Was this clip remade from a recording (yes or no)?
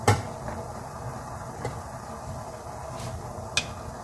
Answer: no